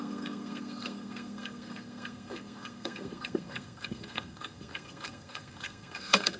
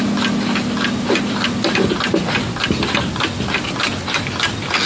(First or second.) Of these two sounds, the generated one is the first